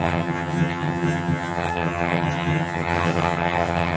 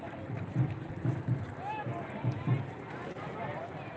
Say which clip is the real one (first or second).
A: second